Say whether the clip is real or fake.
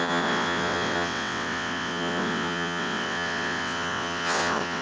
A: fake